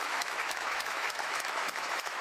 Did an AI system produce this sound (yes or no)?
yes